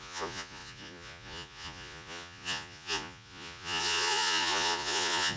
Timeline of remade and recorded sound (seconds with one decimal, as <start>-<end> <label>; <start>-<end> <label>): 0.0-5.4 remade